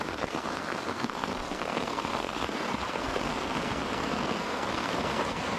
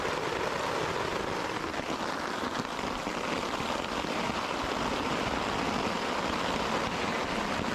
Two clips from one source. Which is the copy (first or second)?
first